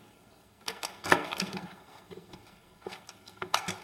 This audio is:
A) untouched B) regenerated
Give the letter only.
B